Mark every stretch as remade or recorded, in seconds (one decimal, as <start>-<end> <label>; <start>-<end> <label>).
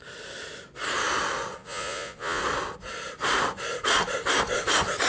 0.0-1.6 recorded; 1.6-2.4 remade; 2.4-5.1 recorded